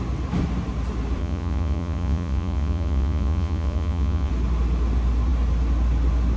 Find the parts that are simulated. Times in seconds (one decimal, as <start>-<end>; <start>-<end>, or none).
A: 1.2-4.3

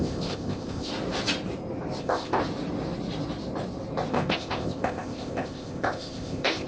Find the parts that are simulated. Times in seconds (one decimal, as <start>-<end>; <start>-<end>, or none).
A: 0.0-0.9; 2.0-2.4; 4.1-6.7

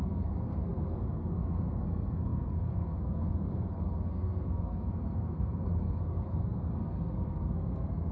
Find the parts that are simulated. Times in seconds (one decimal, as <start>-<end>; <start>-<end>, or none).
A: 0.0-8.1